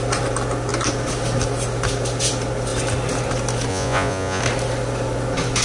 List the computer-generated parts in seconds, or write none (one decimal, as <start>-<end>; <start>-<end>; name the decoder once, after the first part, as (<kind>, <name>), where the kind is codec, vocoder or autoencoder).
3.7-4.4 (vocoder, Vocos)